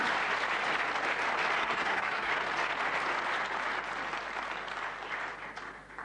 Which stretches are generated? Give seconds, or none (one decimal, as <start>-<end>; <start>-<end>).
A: 1.6-2.3